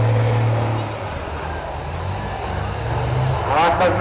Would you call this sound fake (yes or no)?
no